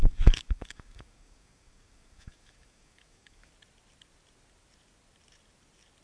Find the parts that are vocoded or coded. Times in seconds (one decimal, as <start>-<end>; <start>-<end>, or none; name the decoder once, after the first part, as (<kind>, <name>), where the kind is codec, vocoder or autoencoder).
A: 0.0-3.5 (codec, DAC)